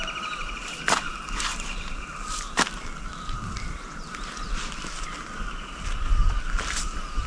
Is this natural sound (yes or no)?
no